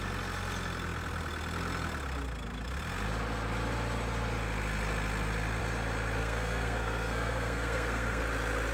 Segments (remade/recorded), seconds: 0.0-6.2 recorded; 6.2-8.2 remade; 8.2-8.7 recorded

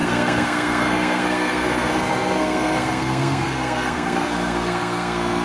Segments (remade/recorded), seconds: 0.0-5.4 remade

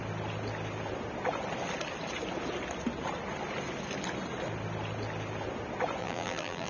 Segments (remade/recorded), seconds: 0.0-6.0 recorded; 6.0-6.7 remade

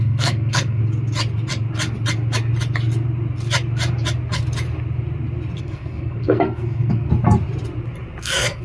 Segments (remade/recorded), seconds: 0.0-0.8 remade; 0.8-5.6 recorded; 5.6-7.1 remade; 7.1-8.2 recorded; 8.2-8.6 remade